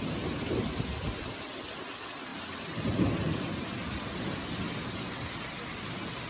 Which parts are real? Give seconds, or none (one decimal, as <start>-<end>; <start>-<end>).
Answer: 0.0-6.3